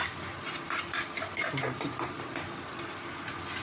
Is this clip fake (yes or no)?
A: no